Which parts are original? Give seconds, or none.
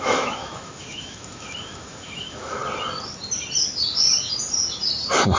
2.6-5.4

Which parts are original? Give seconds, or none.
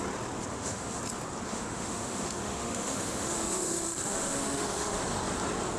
0.0-0.5; 1.0-1.5; 5.0-5.8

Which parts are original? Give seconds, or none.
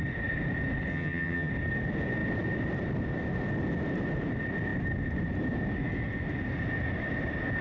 0.0-0.9; 1.5-7.6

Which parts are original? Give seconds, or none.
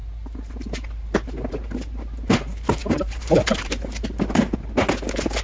0.0-2.8; 3.7-5.4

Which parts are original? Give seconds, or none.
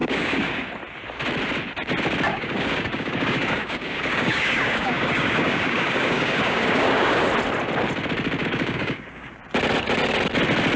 0.7-2.3; 7.3-8.4; 9.3-10.8